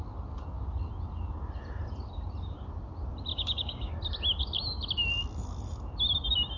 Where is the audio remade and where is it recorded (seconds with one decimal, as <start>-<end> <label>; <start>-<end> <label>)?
0.0-3.3 recorded; 3.3-3.9 remade; 3.9-6.6 recorded